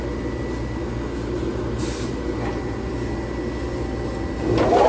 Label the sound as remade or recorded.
recorded